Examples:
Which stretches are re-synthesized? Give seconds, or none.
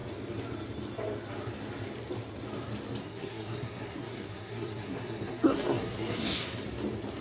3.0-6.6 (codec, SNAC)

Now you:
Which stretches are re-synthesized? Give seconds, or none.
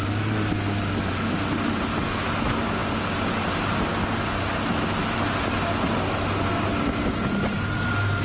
none